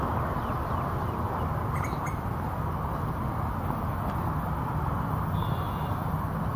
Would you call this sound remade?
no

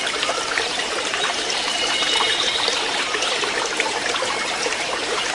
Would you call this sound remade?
yes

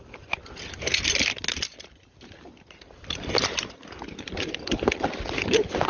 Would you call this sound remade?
no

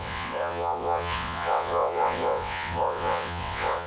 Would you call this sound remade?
yes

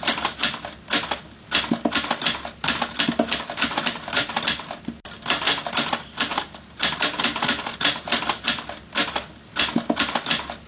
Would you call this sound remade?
no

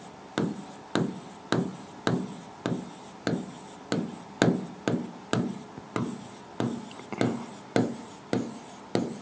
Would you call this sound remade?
no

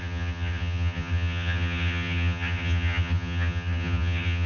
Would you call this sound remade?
yes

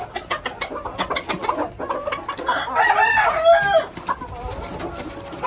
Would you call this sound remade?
no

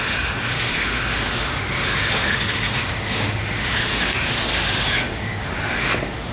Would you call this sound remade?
yes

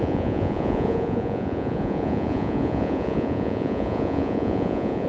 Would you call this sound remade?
yes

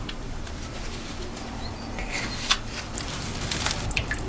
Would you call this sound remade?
yes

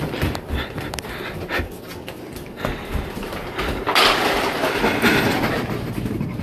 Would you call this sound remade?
no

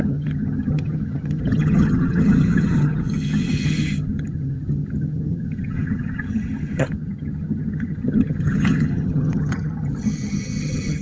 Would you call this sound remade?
yes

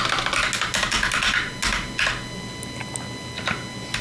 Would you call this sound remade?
no